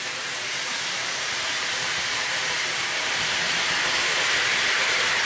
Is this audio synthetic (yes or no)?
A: yes